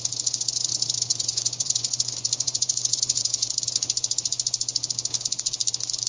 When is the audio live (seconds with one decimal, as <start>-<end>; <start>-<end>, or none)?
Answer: 0.0-1.1; 3.5-6.1